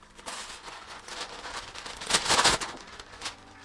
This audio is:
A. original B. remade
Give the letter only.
B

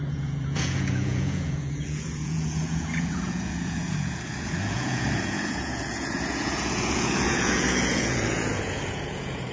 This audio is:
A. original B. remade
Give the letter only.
B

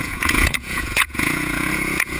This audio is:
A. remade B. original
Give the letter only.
A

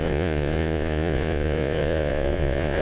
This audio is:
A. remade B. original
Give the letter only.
A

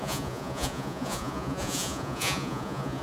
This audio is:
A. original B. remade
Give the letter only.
B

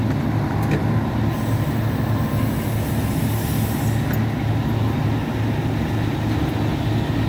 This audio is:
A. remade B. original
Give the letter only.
B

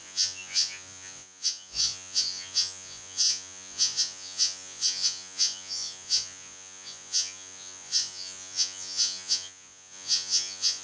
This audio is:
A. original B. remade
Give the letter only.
B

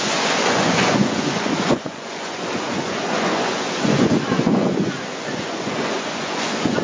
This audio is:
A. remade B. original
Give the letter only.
A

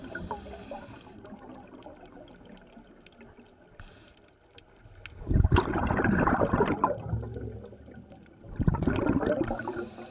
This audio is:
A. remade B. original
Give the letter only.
B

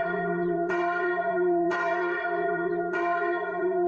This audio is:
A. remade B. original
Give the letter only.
A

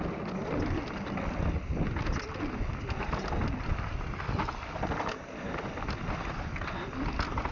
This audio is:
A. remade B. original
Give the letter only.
B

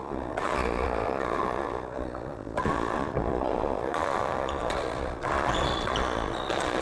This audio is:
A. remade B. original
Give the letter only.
A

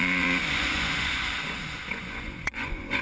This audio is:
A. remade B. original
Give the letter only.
A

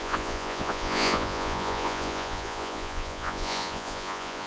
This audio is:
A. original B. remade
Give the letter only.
B